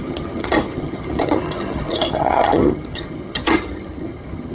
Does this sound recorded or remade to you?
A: remade